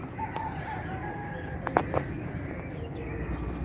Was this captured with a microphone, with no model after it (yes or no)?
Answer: yes